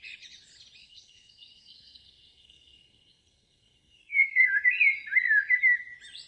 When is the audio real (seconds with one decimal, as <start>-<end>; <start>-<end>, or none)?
0.0-0.8; 4.6-6.3